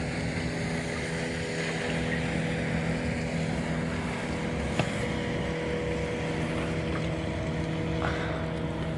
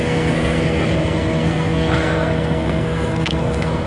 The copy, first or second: second